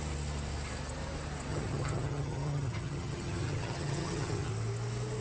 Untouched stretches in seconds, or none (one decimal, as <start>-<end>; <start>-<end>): 0.0-1.5; 4.5-5.2